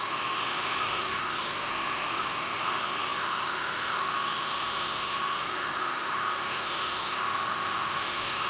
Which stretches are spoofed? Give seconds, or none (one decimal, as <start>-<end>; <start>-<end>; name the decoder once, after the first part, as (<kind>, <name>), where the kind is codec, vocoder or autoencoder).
0.0-8.5 (autoencoder, DAC-VAE)